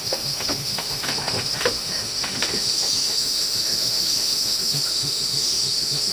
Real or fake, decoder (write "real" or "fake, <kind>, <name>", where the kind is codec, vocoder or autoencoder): fake, autoencoder, DAC-VAE